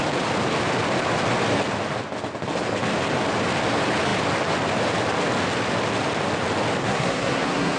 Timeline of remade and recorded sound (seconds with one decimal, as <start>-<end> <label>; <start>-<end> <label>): 0.0-6.8 recorded; 6.8-7.8 remade